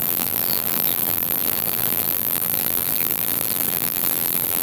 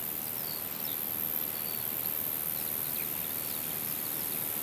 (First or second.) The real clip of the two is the second